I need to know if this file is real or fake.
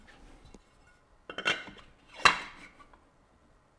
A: real